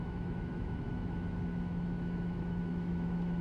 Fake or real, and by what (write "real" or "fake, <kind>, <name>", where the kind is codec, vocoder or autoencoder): fake, autoencoder, DAC-VAE